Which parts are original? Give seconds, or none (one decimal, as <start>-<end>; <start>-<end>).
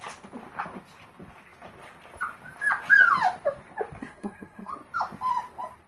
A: 0.0-4.0; 4.7-5.9